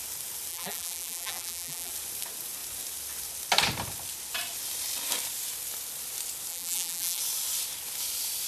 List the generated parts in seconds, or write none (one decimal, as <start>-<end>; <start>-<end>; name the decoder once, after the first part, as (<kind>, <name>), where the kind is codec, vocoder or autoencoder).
0.5-1.9 (vocoder, BigVGAN v2); 6.5-7.2